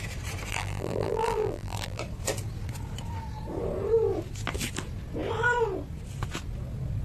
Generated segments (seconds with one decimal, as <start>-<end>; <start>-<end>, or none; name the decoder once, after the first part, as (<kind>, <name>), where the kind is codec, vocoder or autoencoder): 0.5-2.0 (vocoder, BigVGAN v2)